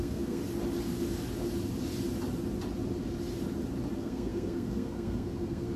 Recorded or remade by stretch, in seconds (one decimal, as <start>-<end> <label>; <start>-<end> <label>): 0.0-0.4 remade; 0.4-3.9 recorded; 3.9-5.8 remade